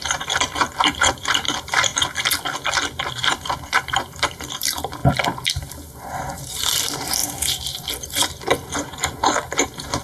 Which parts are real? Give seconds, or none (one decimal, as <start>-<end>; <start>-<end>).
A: 1.9-3.1; 5.0-5.5